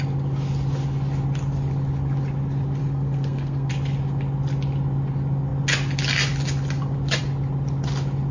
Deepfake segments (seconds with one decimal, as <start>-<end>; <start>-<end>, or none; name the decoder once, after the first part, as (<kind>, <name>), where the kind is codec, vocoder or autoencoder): 2.8-3.7 (codec, SNAC)